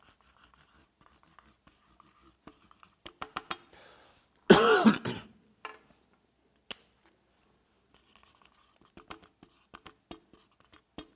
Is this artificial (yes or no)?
no